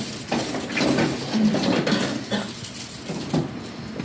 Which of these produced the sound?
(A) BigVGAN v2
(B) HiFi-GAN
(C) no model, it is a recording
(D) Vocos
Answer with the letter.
C